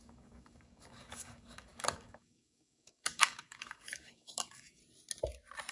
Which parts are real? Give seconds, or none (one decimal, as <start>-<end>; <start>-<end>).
4.8-5.7